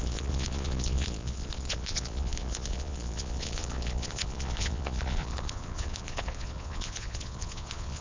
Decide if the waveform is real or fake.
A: fake